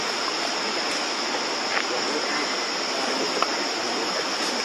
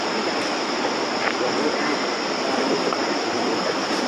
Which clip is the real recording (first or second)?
first